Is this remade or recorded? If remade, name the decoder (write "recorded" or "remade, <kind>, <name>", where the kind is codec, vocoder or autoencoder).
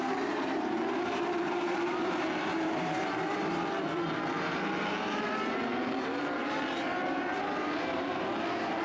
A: remade, vocoder, BigVGAN v2